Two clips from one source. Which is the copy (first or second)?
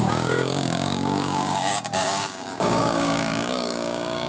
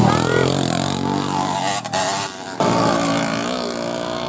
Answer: first